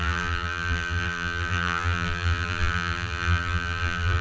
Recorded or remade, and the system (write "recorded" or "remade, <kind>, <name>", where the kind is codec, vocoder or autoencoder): remade, vocoder, BigVGAN v2